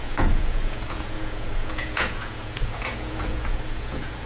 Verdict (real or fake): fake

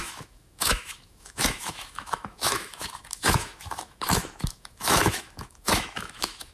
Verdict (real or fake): fake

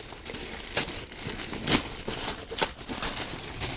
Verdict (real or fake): real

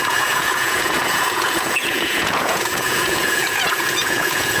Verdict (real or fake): fake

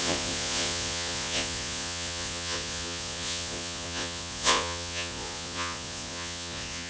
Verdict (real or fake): fake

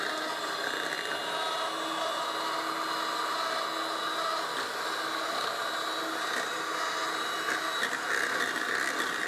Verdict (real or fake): real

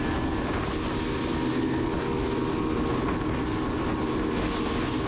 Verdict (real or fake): real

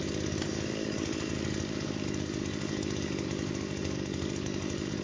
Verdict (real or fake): fake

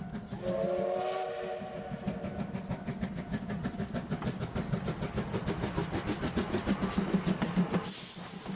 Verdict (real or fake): real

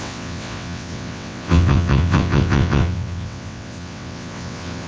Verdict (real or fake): fake